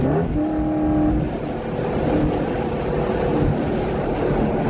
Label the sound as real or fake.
real